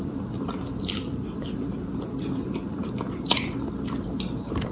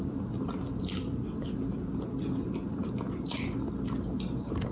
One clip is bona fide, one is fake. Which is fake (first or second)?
first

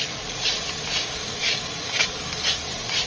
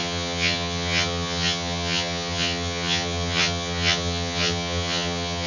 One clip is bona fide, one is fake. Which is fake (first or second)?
second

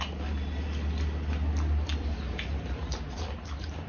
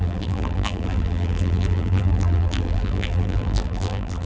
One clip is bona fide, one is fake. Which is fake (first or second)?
second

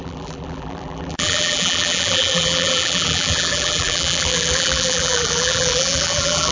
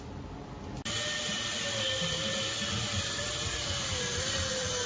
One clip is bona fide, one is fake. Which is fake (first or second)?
first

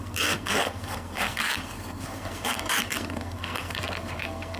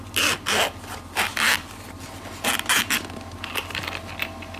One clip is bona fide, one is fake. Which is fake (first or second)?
first